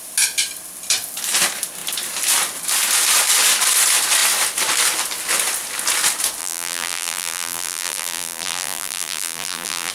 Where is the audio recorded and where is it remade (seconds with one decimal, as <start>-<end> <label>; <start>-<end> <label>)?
0.0-6.4 recorded; 6.4-9.9 remade